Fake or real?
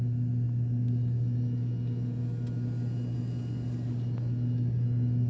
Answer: real